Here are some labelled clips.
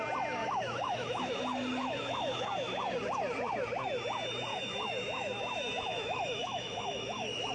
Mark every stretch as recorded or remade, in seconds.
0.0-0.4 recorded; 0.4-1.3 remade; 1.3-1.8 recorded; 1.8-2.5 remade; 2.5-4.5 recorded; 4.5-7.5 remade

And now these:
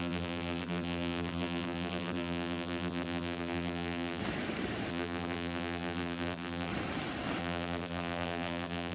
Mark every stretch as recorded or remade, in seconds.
0.0-4.2 remade; 4.2-4.9 recorded; 4.9-6.7 remade; 6.7-7.4 recorded; 7.4-8.9 remade

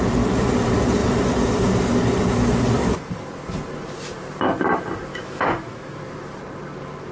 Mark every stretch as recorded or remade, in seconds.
0.0-5.1 recorded; 5.1-6.0 remade; 6.0-7.1 recorded

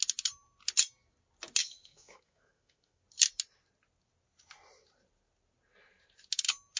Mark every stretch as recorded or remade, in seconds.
0.0-1.6 recorded; 1.6-3.0 remade; 3.0-6.8 recorded

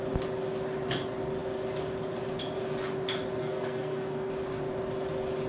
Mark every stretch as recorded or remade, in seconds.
0.0-3.4 recorded; 3.4-4.3 remade; 4.3-5.5 recorded

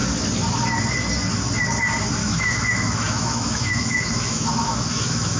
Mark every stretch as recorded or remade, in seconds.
0.0-2.2 recorded; 2.2-5.4 remade